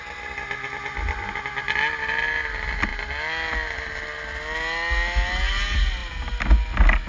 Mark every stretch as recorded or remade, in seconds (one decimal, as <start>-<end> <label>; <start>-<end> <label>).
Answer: 0.0-7.1 recorded